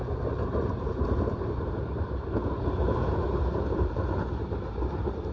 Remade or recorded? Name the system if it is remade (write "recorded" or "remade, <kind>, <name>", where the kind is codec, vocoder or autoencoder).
remade, vocoder, BigVGAN v2